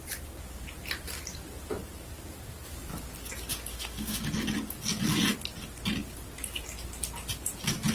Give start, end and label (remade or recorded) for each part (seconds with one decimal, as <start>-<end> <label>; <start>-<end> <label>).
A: 0.0-3.7 recorded; 3.7-4.2 remade; 4.2-7.9 recorded